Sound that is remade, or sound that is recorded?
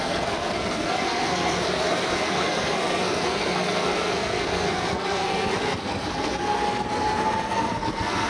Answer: remade